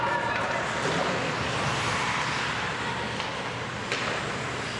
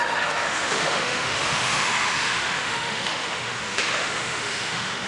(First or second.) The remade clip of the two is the second